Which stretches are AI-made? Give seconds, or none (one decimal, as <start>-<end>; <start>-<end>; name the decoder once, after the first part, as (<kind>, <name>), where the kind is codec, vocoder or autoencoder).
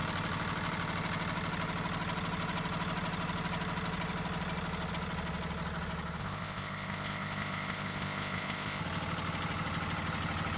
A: 6.2-8.8 (codec, ZipCodec)